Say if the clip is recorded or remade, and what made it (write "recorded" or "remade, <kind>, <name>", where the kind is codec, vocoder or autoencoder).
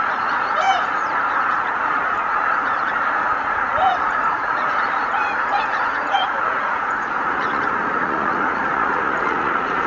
remade, vocoder, Vocos